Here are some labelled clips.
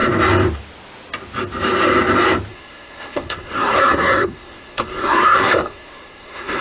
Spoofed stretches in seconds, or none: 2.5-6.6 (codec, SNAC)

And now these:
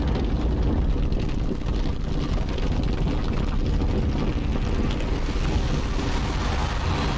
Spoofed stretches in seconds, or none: none